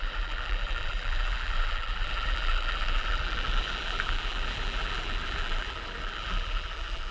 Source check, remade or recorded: remade